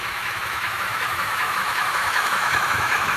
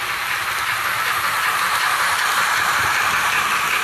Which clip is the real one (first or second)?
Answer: second